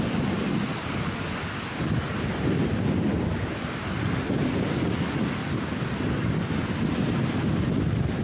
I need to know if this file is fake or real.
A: real